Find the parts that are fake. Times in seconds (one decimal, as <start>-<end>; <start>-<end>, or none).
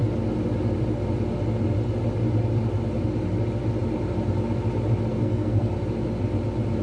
5.1-5.7